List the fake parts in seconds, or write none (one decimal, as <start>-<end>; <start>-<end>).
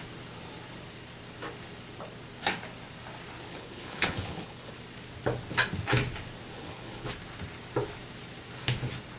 3.5-4.7; 6.5-7.1